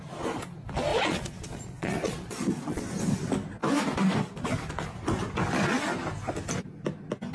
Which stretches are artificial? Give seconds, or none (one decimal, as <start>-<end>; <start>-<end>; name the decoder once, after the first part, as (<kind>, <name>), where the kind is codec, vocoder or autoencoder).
0.9-2.8 (vocoder, Vocos)